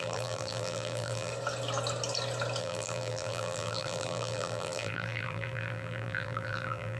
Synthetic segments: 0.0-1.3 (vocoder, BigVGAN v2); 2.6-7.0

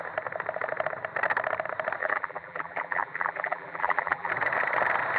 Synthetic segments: 2.0-4.3 (vocoder, BigVGAN v2)

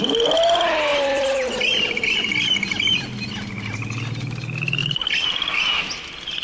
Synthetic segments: 0.9-2.6 (vocoder, BigVGAN v2); 4.8-5.9

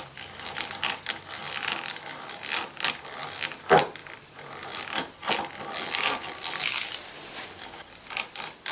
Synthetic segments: 4.0-7.9 (vocoder, BigVGAN v2)

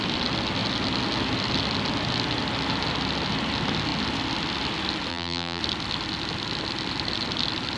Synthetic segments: 5.1-5.6 (vocoder, BigVGAN v2)

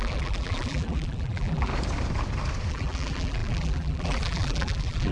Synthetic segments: 0.0-1.7 (vocoder, BigVGAN v2); 2.7-5.1

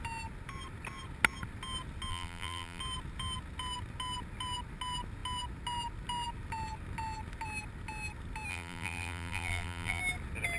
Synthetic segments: 2.1-2.8 (vocoder, BigVGAN v2); 8.5-10.0